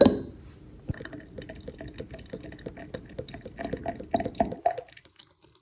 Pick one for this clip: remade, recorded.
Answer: recorded